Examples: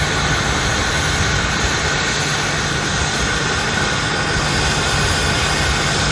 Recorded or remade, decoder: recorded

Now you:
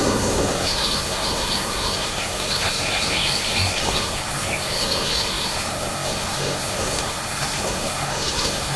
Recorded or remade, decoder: remade, codec, SNAC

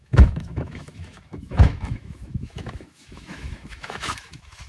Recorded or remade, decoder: remade, autoencoder, DAC-VAE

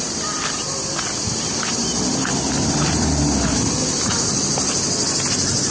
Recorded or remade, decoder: remade, vocoder, BigVGAN v2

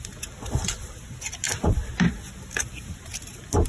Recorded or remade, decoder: recorded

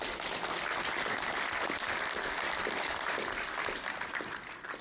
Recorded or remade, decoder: recorded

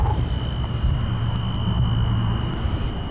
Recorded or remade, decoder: recorded